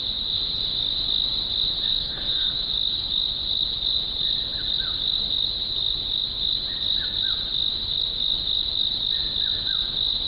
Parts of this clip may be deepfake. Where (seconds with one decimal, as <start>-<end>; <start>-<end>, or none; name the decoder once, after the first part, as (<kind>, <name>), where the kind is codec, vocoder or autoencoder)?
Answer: 1.9-2.5 (codec, DAC)